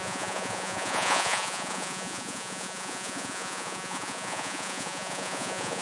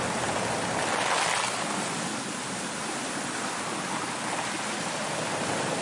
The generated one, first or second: first